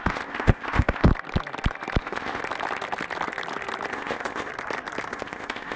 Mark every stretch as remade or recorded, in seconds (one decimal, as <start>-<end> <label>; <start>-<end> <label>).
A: 0.0-1.1 remade; 1.1-2.0 recorded; 2.0-2.4 remade; 2.4-3.9 recorded; 3.9-4.5 remade; 4.5-5.1 recorded; 5.1-5.8 remade